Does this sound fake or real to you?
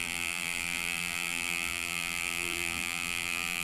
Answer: fake